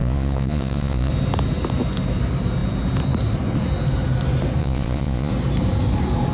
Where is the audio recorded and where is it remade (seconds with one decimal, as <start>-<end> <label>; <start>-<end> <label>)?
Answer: 0.0-1.1 remade; 1.1-4.6 recorded; 4.6-5.3 remade; 5.3-6.3 recorded